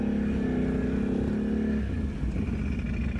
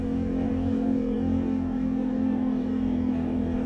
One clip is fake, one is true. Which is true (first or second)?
first